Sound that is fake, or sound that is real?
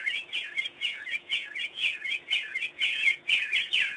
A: fake